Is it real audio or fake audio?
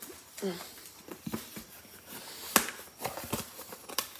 real